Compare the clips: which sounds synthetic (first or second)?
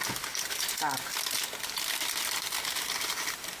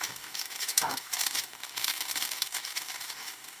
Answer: second